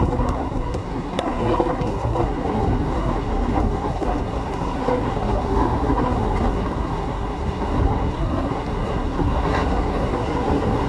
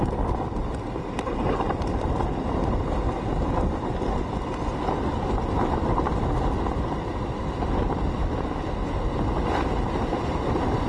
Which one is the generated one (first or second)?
first